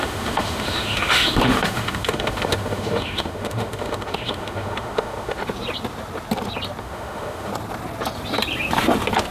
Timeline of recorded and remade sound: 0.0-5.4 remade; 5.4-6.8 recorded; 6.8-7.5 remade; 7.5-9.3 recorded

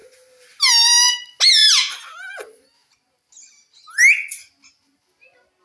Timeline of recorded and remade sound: 0.0-5.6 recorded

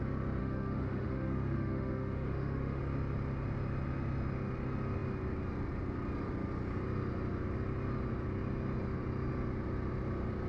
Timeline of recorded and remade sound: 0.0-0.4 recorded; 0.4-2.8 remade; 2.8-10.5 recorded

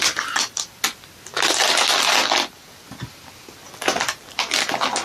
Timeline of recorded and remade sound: 0.0-5.0 recorded